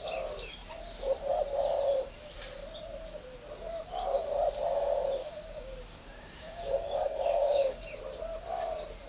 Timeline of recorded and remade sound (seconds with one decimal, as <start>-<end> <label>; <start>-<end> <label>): 0.0-5.2 recorded; 5.2-7.8 remade; 7.8-9.1 recorded